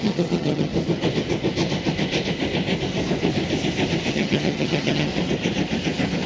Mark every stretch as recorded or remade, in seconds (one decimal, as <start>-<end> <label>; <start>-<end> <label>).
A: 0.0-0.7 remade; 0.7-4.1 recorded; 4.1-5.1 remade; 5.1-6.3 recorded

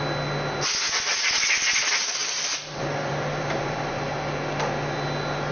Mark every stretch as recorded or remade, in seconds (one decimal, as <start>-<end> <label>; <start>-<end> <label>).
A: 0.0-2.2 recorded; 2.2-4.1 remade; 4.1-5.5 recorded

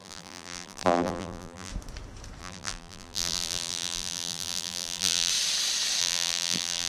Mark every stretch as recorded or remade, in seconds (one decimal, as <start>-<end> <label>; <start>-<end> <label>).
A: 0.0-1.7 remade; 1.7-2.4 recorded; 2.4-5.3 remade; 5.3-6.0 recorded; 6.0-6.9 remade

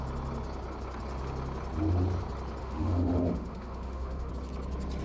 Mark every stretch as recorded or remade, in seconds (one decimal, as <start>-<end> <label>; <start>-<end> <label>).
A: 0.0-2.6 recorded; 2.6-4.3 remade; 4.3-5.0 recorded

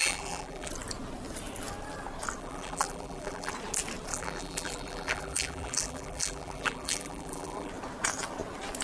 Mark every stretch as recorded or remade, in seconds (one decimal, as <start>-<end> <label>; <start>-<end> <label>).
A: 0.0-0.7 remade; 0.7-2.4 recorded; 2.4-3.5 remade; 3.5-4.1 recorded; 4.1-7.7 remade; 7.7-8.8 recorded

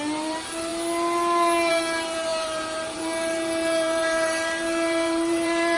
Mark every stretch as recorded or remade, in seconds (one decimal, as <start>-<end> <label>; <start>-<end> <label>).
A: 0.0-0.7 remade; 0.7-1.7 recorded; 1.7-5.8 remade

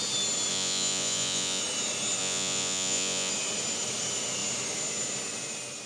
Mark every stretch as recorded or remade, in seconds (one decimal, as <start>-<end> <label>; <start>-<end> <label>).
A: 0.0-0.5 recorded; 0.5-1.6 remade; 1.6-2.2 recorded; 2.2-3.3 remade; 3.3-5.9 recorded

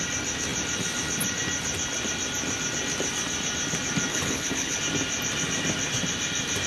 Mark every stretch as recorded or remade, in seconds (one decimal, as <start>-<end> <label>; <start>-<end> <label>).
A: 0.0-4.1 recorded; 4.1-4.8 remade; 4.8-6.7 recorded